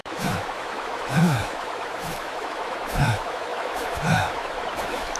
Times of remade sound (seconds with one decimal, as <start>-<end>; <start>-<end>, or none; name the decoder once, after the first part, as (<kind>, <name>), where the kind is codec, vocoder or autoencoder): 0.0-5.2 (autoencoder, DAC-VAE)

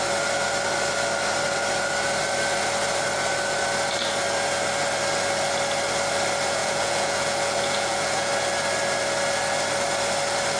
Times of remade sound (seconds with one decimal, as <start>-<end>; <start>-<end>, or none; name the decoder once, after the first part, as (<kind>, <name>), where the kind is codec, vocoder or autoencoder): 6.6-8.3 (vocoder, Vocos)

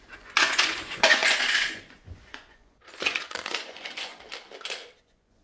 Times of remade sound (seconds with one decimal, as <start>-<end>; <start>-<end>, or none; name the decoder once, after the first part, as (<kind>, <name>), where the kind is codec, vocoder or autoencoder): 0.0-4.1 (vocoder, Vocos); 5.0-5.4

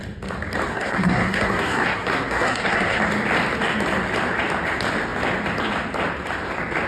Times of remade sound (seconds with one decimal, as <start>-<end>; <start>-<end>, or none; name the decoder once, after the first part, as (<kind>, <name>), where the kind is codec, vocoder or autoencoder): 0.7-3.0 (codec, SNAC)

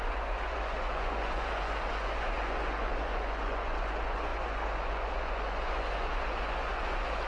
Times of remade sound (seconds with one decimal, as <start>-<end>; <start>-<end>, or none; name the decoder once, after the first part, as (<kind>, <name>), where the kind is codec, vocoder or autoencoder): 0.0-7.3 (vocoder, Vocos)